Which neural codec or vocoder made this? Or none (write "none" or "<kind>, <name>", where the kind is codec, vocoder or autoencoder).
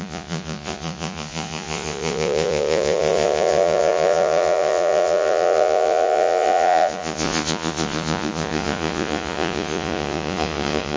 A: vocoder, Vocos